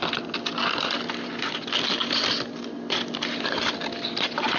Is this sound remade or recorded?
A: recorded